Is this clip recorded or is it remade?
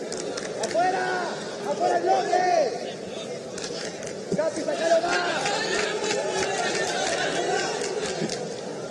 recorded